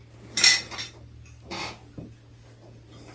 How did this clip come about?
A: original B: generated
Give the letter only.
A